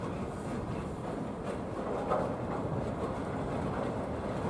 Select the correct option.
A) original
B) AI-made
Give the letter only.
A